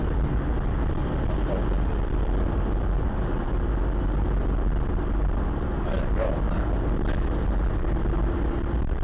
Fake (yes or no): no